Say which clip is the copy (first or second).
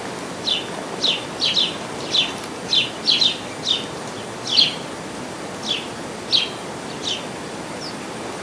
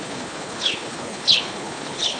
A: second